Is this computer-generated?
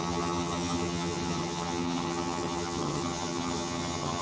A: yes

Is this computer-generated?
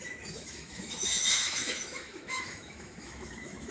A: yes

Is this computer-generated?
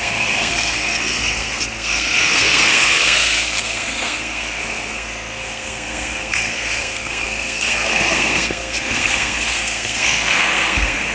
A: yes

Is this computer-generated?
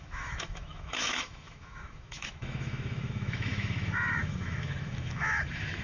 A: yes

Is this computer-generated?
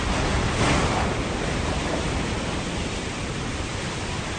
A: no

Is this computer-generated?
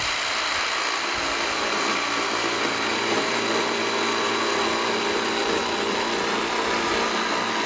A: no